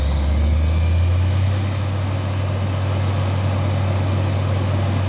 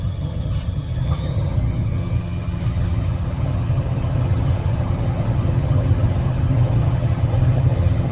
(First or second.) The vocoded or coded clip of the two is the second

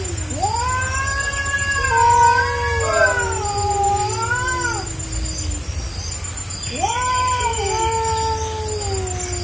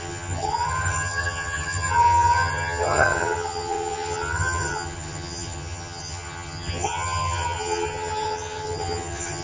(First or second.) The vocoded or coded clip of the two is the second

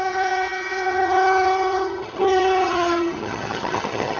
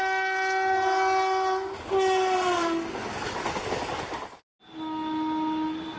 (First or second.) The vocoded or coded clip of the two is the first